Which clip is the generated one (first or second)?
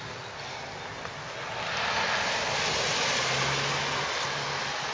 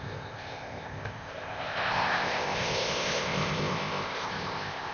second